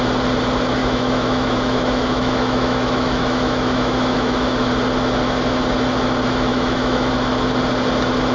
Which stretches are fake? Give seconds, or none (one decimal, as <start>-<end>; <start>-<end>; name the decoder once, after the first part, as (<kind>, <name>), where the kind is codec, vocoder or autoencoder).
0.8-4.7 (autoencoder, DAC-VAE); 6.5-7.1